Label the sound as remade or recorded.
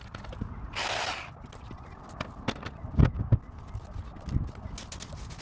recorded